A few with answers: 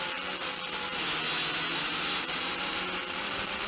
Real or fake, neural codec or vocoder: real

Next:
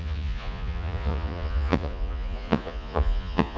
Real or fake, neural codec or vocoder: fake, vocoder, Vocos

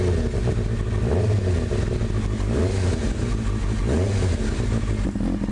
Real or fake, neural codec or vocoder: real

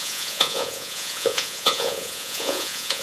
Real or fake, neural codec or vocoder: fake, vocoder, Vocos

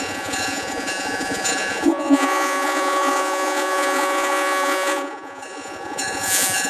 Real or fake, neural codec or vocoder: fake, vocoder, Vocos